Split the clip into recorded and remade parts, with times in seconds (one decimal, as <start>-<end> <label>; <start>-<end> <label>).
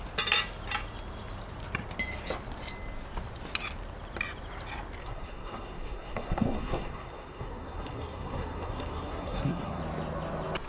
0.0-5.0 recorded; 5.0-9.8 remade; 9.8-10.7 recorded